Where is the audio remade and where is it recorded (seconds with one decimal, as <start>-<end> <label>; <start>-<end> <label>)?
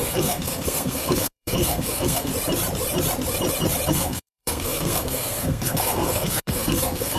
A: 0.0-2.3 remade; 2.3-3.9 recorded; 3.9-7.2 remade